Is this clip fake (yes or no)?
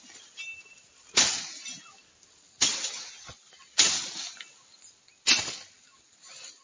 no